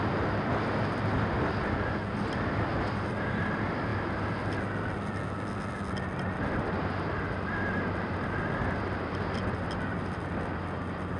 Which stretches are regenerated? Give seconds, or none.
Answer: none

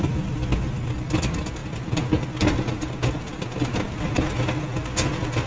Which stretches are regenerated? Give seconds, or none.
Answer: none

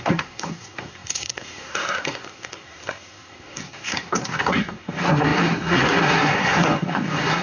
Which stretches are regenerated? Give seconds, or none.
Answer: 0.0-7.4 (codec, SNAC)

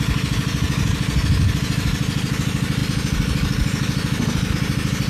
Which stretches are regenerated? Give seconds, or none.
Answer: none